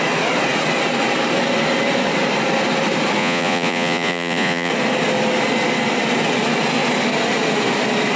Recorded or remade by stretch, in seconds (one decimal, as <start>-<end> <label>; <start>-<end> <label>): 0.0-3.2 recorded; 3.2-4.7 remade; 4.7-8.2 recorded